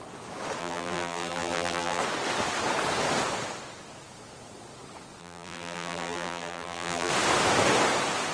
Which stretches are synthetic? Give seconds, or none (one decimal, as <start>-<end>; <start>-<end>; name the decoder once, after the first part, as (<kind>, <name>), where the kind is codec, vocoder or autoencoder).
0.6-2.0 (vocoder, BigVGAN v2); 5.2-7.1